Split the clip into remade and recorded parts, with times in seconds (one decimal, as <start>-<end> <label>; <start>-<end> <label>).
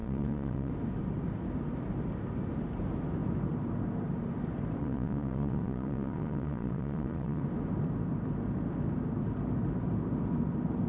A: 0.0-0.7 remade; 0.7-4.8 recorded; 4.8-7.4 remade; 7.4-10.9 recorded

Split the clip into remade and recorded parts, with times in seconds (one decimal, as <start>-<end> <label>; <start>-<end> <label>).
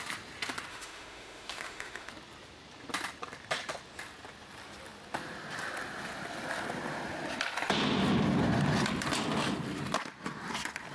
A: 0.0-0.7 recorded; 0.7-2.1 remade; 2.1-10.9 recorded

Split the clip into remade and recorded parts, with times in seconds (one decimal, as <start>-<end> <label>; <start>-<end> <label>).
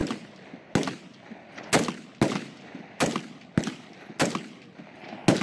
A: 0.0-5.4 recorded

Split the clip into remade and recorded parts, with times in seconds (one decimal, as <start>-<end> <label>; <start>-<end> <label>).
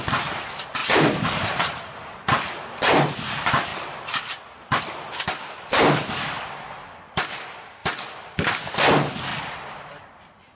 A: 0.0-0.8 recorded; 0.8-2.5 remade; 2.5-10.5 recorded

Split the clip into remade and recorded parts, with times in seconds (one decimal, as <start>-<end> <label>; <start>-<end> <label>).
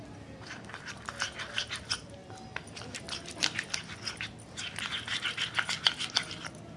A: 0.0-6.8 recorded